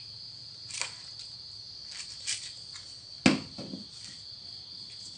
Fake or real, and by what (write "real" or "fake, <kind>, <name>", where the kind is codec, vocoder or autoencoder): real